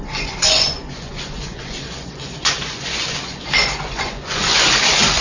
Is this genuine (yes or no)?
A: no